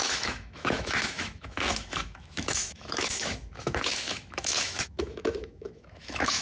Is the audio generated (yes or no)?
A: yes